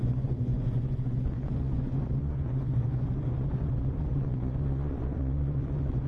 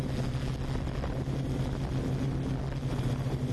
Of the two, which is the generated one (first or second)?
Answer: first